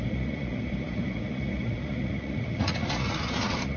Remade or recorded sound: remade